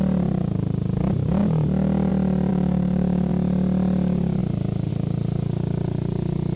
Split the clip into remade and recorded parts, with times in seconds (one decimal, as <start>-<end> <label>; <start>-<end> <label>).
0.0-2.5 recorded; 2.5-3.3 remade; 3.3-6.6 recorded